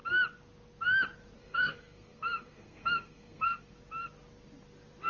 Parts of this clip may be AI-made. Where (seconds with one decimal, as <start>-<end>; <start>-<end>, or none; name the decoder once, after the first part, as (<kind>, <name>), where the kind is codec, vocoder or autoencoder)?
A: 1.4-3.7 (codec, SNAC)